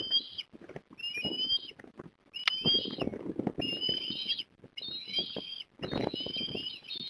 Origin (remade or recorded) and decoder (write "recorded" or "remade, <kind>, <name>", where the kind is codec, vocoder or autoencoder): recorded